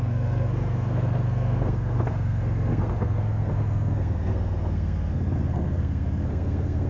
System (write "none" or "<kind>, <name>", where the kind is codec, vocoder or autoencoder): codec, SNAC